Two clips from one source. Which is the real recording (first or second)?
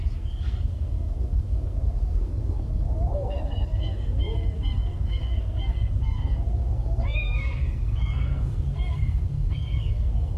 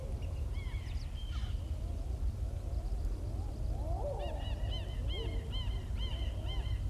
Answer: second